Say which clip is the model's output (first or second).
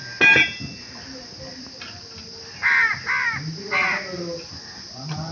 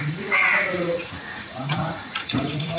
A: second